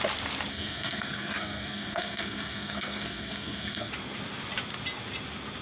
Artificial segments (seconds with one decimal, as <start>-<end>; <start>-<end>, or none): 0.5-3.9